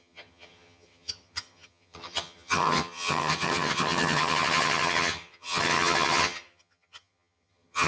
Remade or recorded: remade